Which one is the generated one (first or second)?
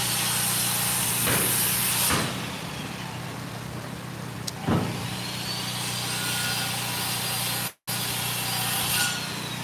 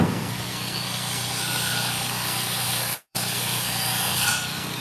second